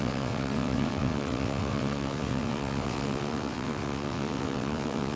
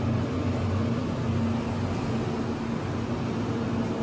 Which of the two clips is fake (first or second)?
first